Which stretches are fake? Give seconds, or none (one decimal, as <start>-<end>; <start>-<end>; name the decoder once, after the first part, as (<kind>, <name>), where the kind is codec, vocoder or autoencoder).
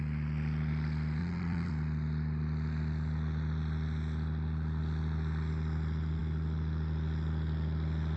1.2-1.7 (vocoder, Vocos)